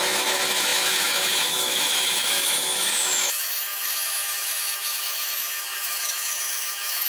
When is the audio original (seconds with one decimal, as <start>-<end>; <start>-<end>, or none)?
none